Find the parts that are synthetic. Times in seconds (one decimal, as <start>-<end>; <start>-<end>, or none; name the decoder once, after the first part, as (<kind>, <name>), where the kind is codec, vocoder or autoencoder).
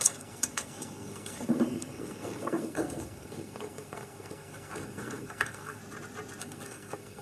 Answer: 0.0-5.8 (codec, SNAC); 6.4-7.2